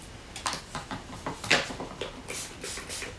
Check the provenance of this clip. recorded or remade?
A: recorded